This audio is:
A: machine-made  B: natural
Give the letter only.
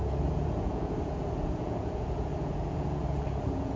A